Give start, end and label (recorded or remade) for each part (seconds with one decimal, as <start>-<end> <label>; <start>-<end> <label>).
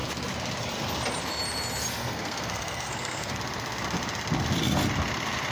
0.0-2.0 recorded; 2.0-3.4 remade; 3.4-5.5 recorded